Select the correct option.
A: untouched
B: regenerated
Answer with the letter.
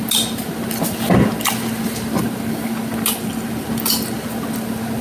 A